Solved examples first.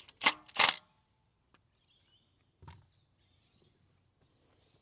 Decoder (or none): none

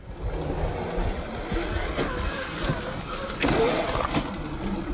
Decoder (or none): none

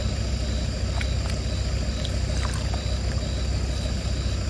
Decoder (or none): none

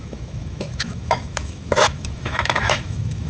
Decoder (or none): autoencoder, DAC-VAE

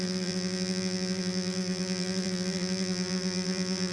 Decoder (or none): vocoder, BigVGAN v2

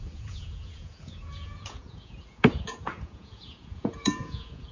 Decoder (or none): vocoder, Vocos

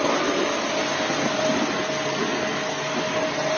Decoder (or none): none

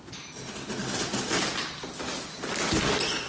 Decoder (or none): none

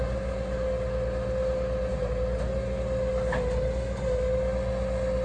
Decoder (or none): none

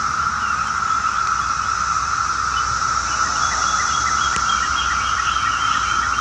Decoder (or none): none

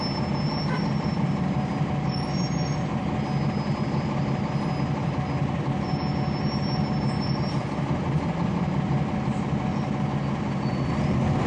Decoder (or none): none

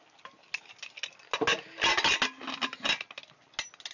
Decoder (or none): none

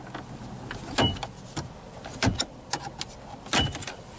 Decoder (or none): none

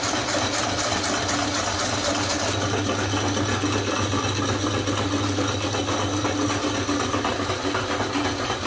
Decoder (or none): none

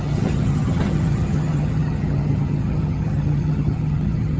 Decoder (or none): vocoder, HiFi-GAN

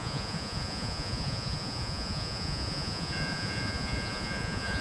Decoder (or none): vocoder, Vocos